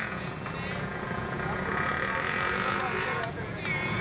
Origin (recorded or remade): remade